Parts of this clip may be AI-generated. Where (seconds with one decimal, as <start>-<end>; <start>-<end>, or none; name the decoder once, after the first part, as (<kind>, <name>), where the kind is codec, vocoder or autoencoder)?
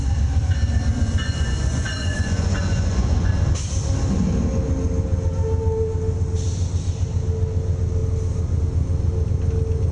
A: 1.2-3.3 (vocoder, Vocos)